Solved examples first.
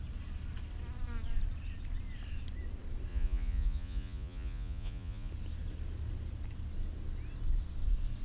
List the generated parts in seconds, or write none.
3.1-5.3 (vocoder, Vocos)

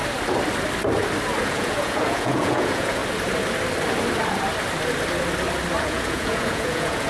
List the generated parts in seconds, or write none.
1.4-3.0 (vocoder, Vocos); 5.8-7.1

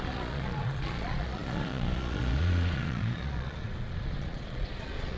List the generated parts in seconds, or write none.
0.0-5.2 (vocoder, Vocos)

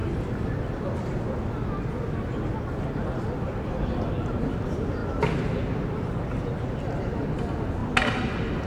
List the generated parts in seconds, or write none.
none

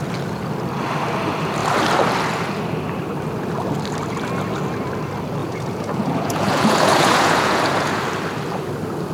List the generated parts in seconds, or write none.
5.4-8.0 (vocoder, Vocos)